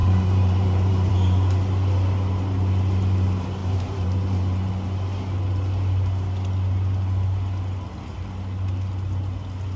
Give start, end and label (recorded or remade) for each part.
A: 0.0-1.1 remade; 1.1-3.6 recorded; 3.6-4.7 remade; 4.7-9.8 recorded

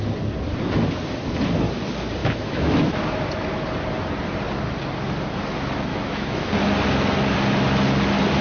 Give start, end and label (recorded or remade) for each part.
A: 0.0-2.2 recorded; 2.2-3.0 remade; 3.0-5.9 recorded; 5.9-6.5 remade; 6.5-8.4 recorded

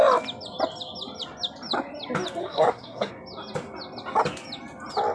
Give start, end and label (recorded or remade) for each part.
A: 0.0-2.4 recorded; 2.4-3.1 remade; 3.1-5.1 recorded

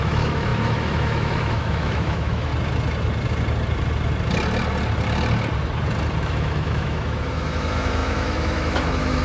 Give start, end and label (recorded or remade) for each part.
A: 0.0-2.5 remade; 2.5-6.2 recorded; 6.2-9.2 remade